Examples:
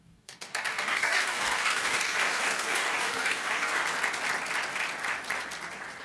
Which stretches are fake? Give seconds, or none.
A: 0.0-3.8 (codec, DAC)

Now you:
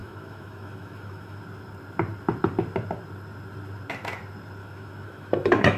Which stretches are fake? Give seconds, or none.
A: 0.0-1.4 (autoencoder, DAC-VAE); 4.6-5.8

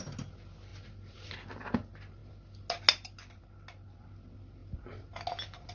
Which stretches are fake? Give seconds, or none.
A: none

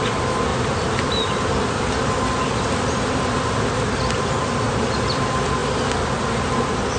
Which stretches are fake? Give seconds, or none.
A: 0.5-2.1 (vocoder, BigVGAN v2)

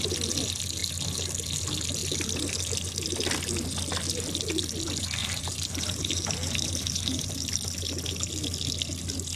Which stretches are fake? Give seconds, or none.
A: 5.2-7.5 (vocoder, BigVGAN v2)

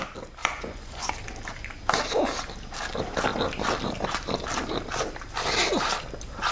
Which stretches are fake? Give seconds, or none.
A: 0.4-1.1 (vocoder, Vocos)